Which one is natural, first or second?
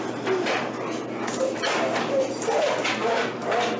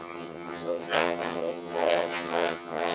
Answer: first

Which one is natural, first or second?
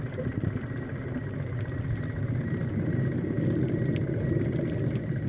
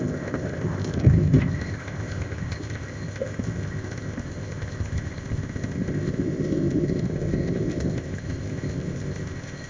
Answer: first